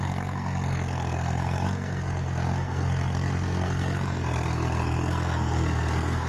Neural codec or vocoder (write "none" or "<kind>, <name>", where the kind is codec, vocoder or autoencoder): codec, SNAC